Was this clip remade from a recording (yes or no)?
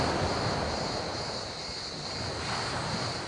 no